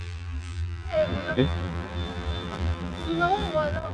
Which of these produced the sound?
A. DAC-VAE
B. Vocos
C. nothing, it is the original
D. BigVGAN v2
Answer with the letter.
D